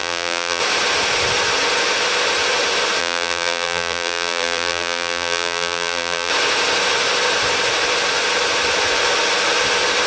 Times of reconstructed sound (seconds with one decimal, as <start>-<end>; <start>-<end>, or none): 0.0-0.6; 3.0-6.3